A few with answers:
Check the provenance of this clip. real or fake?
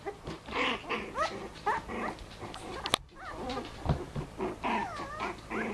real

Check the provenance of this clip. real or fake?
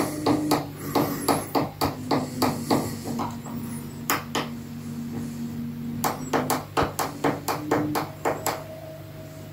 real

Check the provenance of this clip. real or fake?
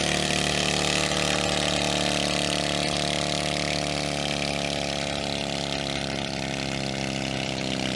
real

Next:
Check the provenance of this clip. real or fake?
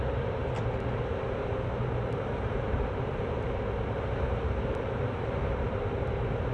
fake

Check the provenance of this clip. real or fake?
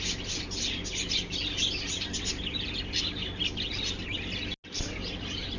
real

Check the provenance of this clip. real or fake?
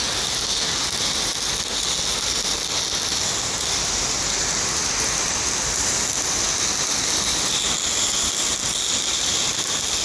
real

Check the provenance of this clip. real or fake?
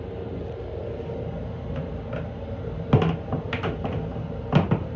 real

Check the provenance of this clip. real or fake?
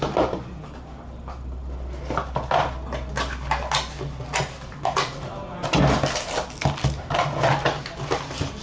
real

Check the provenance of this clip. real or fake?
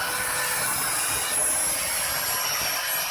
real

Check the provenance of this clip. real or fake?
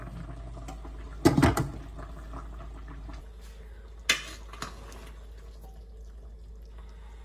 real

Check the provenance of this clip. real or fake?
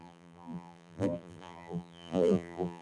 fake